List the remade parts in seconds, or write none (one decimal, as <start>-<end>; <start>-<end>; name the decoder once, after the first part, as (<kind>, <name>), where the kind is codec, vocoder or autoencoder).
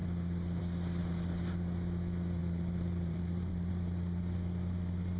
1.0-1.5 (vocoder, BigVGAN v2); 2.4-3.7